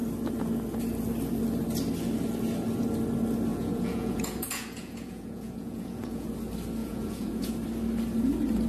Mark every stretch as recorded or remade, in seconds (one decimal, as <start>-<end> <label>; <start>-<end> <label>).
0.0-3.5 recorded; 3.5-6.3 remade; 6.3-6.8 recorded; 6.8-7.5 remade; 7.5-8.7 recorded